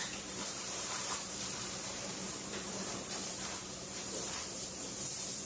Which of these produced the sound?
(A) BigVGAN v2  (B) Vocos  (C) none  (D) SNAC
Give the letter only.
A